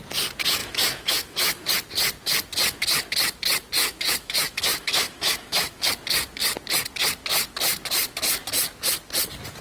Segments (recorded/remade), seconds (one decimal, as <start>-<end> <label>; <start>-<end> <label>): 0.0-0.6 recorded; 0.6-1.7 remade; 1.7-3.8 recorded; 3.8-5.9 remade; 5.9-9.6 recorded